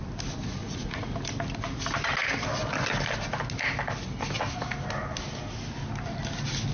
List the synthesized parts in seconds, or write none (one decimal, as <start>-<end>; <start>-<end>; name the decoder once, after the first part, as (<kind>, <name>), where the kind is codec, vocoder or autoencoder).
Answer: 0.6-1.1 (vocoder, Vocos)